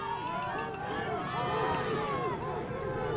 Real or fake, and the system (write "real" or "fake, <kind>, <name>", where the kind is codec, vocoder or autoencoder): real